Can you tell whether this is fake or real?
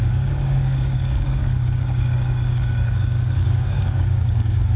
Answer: fake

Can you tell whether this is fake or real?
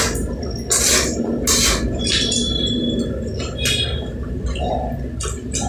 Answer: real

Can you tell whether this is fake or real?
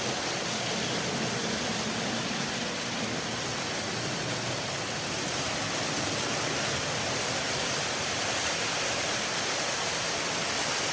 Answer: real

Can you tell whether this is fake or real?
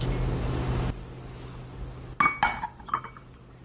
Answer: real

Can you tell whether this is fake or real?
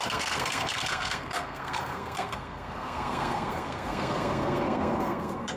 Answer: fake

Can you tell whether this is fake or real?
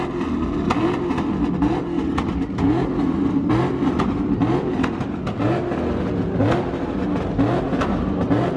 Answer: real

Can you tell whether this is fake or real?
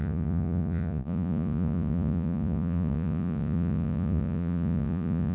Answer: fake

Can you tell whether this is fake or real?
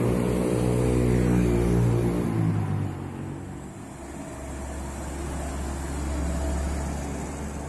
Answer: real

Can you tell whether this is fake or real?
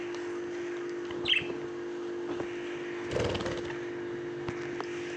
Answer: real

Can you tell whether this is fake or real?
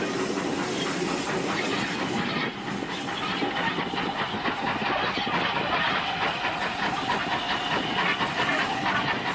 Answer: real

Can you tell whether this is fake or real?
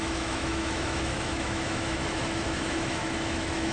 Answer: fake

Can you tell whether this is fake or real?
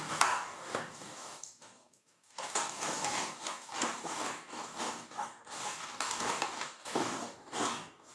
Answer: fake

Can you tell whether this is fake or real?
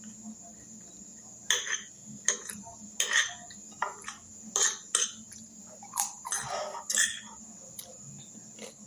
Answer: real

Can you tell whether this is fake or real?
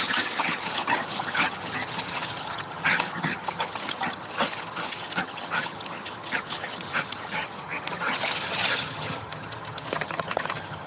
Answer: fake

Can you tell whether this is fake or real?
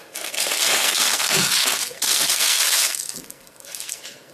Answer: fake